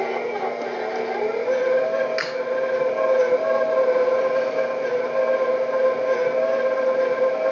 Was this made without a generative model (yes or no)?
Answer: yes